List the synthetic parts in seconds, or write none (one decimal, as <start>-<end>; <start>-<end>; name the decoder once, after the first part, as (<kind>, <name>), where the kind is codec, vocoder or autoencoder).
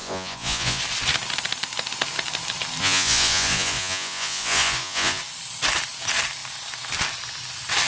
0.0-0.8 (vocoder, Vocos); 2.8-5.2